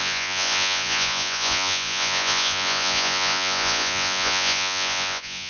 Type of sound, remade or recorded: remade